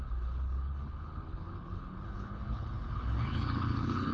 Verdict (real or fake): fake